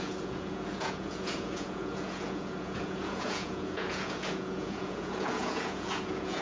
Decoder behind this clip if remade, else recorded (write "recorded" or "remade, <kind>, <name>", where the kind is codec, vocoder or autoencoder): remade, vocoder, Vocos